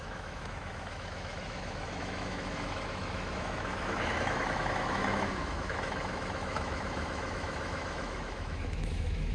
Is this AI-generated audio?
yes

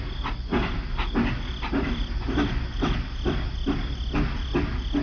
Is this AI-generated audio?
no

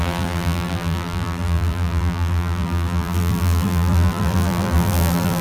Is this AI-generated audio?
yes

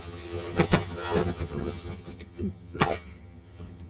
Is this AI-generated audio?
yes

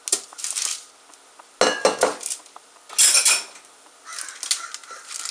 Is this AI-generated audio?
no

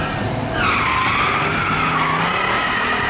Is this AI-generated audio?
no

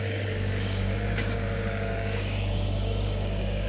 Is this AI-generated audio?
yes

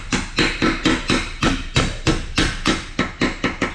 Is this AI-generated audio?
no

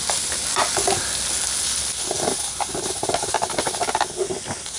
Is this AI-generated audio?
no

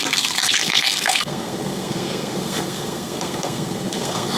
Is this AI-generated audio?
yes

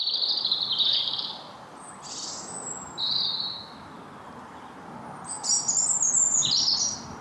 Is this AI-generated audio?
no